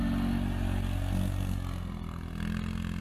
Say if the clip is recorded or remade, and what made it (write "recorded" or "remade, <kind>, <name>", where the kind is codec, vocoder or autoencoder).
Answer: recorded